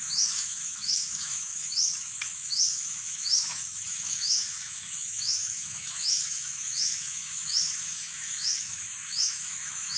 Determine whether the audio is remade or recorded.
remade